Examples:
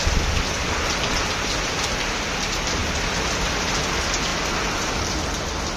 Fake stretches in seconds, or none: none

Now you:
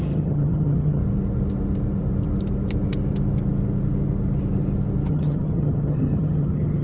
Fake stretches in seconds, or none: 0.0-1.0 (vocoder, HiFi-GAN); 5.1-6.8

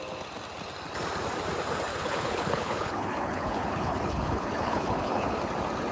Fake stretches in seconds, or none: 1.9-5.4 (codec, HILCodec)

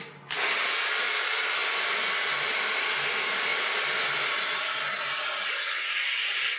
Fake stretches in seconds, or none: none

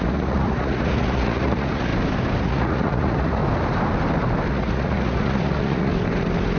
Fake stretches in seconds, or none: 0.0-1.9 (vocoder, Vocos); 2.4-3.4; 4.5-5.9

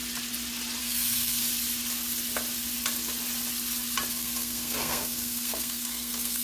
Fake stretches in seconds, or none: 0.8-1.4 (codec, SNAC); 4.1-6.4

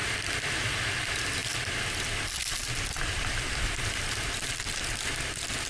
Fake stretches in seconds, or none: 0.0-0.8 (vocoder, BigVGAN v2); 1.4-4.8